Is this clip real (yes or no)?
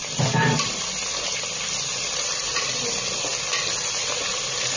no